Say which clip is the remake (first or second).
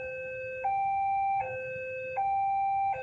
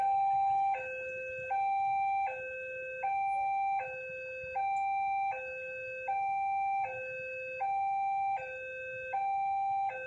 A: first